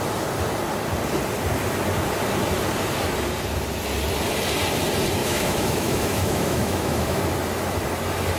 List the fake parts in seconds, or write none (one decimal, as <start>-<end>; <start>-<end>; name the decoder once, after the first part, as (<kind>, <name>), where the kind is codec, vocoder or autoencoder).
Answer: 5.2-7.2 (autoencoder, DAC-VAE)